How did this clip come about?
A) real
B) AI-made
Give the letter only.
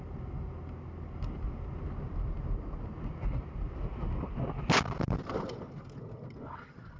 A